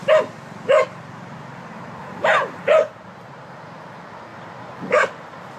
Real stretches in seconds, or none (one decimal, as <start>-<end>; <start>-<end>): 0.0-2.0; 2.9-4.3